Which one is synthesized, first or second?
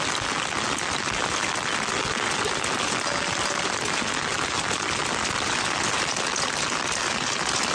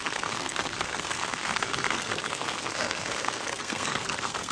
second